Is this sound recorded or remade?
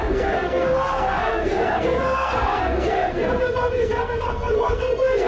remade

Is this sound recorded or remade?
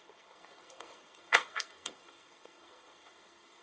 remade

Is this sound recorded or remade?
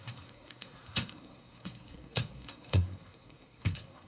remade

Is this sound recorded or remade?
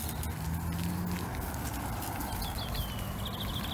recorded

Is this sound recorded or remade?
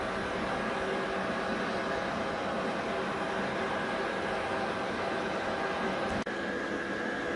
recorded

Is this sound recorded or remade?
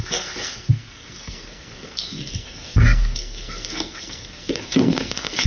remade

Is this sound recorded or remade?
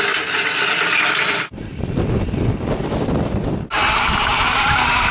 recorded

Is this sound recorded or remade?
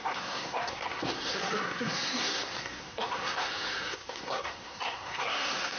remade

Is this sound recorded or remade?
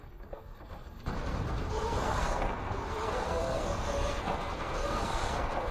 remade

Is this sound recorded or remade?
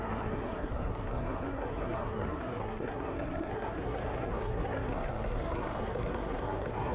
remade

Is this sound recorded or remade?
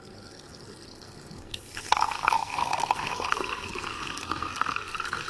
remade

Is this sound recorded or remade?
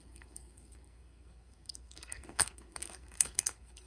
remade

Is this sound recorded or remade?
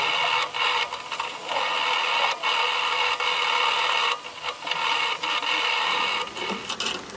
recorded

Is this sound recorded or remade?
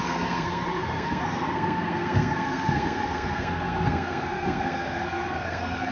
remade